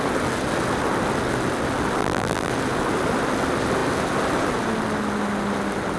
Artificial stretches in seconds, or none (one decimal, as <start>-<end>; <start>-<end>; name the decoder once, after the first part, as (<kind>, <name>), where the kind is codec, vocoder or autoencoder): 2.0-2.5 (vocoder, BigVGAN v2)